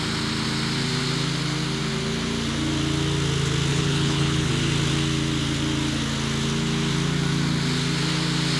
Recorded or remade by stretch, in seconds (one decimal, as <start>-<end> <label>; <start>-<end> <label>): 0.0-3.7 recorded; 3.7-4.5 remade; 4.5-8.6 recorded